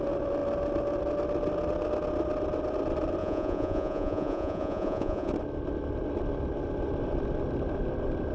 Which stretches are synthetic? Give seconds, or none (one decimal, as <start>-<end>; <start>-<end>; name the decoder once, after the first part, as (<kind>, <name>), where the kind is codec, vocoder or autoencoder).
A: 3.2-5.3 (vocoder, Vocos)